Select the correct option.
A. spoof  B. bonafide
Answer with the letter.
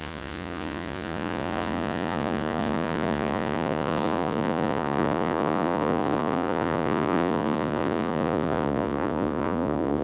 A